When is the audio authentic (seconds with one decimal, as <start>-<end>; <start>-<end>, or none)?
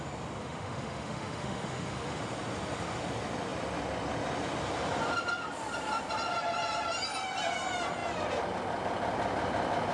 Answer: 0.0-0.4; 2.2-9.9